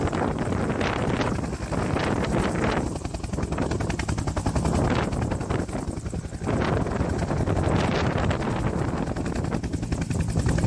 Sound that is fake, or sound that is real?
real